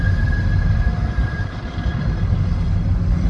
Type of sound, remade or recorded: recorded